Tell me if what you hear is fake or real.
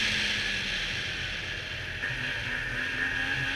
real